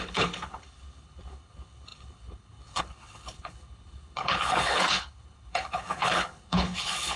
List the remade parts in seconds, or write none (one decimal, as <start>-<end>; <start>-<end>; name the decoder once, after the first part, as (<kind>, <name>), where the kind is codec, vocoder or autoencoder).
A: 0.0-7.2 (codec, HILCodec)